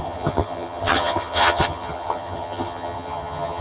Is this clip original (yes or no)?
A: no